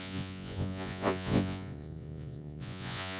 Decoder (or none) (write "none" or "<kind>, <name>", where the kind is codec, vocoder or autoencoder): vocoder, Vocos